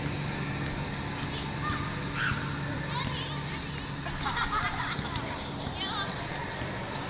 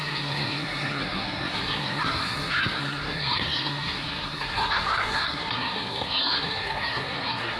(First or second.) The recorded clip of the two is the first